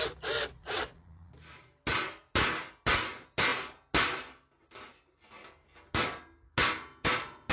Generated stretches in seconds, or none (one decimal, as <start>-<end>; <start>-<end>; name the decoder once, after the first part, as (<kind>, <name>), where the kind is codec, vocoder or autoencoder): 0.6-1.3 (vocoder, Vocos)